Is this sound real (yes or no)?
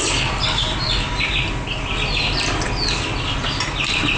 yes